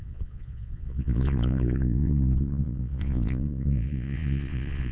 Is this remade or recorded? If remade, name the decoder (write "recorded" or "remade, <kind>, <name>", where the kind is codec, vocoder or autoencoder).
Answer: remade, vocoder, Vocos